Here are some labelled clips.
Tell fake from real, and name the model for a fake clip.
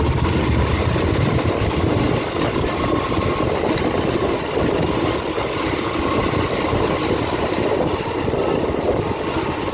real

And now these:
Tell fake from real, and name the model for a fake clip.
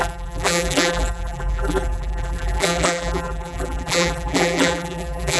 fake, vocoder, BigVGAN v2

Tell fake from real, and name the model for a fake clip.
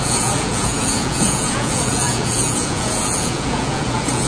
fake, vocoder, Vocos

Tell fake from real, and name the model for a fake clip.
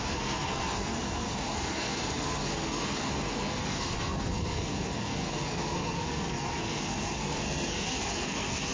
fake, codec, SNAC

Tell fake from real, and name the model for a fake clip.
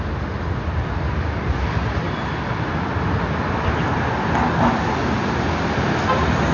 real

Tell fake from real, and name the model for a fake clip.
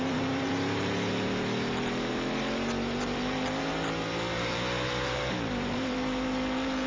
fake, vocoder, BigVGAN v2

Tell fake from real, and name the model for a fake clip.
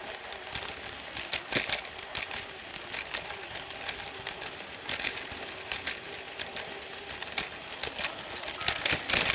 real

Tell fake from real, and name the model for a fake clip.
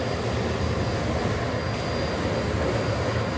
real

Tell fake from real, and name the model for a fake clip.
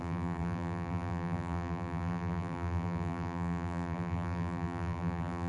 fake, vocoder, BigVGAN v2